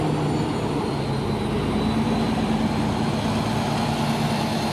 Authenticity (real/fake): real